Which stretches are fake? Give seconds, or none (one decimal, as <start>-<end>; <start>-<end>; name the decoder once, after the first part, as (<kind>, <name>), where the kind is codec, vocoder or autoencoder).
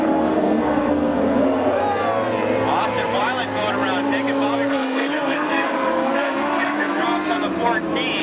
0.0-1.8 (codec, SNAC); 4.7-7.0